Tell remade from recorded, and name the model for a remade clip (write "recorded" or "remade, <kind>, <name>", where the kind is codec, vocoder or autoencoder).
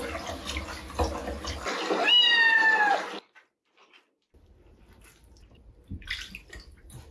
recorded